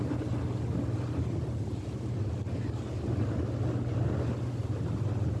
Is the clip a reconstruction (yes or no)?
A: no